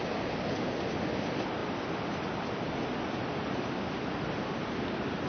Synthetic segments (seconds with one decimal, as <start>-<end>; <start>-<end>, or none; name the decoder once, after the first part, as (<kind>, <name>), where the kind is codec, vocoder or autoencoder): none